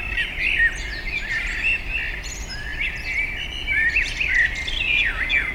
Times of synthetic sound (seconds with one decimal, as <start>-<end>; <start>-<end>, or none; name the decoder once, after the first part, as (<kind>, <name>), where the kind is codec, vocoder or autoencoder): none